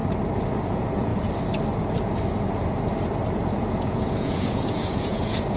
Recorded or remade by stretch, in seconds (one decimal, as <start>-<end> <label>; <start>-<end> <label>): 0.0-0.6 recorded; 0.6-1.1 remade; 1.1-3.7 recorded; 3.7-5.6 remade